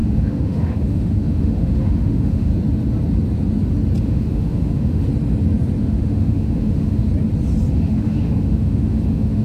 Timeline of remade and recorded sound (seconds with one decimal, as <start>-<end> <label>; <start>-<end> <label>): 0.0-2.5 remade; 2.5-4.0 recorded; 4.0-5.1 remade; 5.1-5.8 recorded; 5.8-7.1 remade; 7.1-7.7 recorded; 7.7-9.4 remade